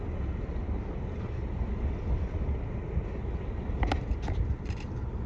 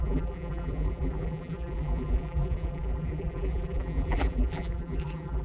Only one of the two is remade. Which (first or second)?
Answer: second